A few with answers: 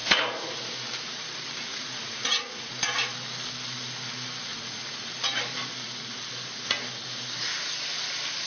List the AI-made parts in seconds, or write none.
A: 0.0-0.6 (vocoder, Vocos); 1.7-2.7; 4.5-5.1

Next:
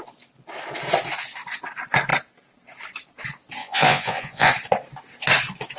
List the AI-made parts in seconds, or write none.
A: 3.6-4.5 (vocoder, Vocos)